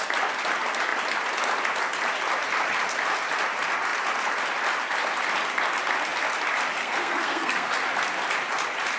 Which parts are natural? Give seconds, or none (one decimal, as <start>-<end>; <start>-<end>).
0.0-6.8; 7.7-9.0